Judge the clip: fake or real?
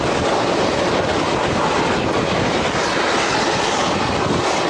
real